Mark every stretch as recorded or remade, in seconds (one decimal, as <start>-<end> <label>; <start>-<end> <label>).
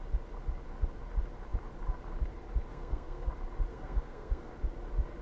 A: 0.0-2.7 recorded; 2.7-3.3 remade; 3.3-3.7 recorded; 3.7-4.5 remade; 4.5-5.2 recorded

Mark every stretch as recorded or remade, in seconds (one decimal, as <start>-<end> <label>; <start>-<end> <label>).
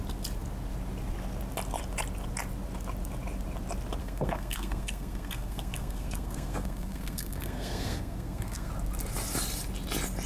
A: 0.0-4.0 recorded; 4.0-8.7 remade; 8.7-10.3 recorded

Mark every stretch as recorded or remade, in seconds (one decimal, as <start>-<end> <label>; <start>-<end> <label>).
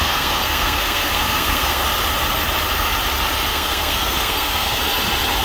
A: 0.0-1.8 remade; 1.8-3.5 recorded; 3.5-4.8 remade; 4.8-5.4 recorded